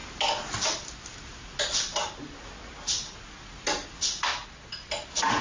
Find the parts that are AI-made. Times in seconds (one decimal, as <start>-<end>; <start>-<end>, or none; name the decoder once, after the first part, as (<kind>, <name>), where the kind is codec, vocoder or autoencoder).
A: none